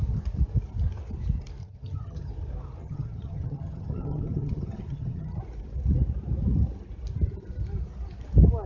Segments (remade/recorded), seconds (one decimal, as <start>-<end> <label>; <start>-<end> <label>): 0.0-1.6 recorded; 1.6-2.3 remade; 2.3-2.8 recorded; 2.8-5.4 remade; 5.4-8.7 recorded